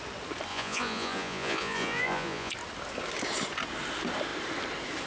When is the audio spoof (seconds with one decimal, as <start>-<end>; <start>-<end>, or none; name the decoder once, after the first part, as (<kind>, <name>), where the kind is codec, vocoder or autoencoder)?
0.5-2.5 (vocoder, Vocos)